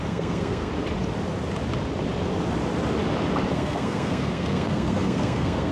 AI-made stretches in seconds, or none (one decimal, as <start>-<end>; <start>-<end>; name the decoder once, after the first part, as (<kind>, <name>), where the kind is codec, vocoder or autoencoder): 0.0-0.7 (codec, SNAC); 3.5-5.7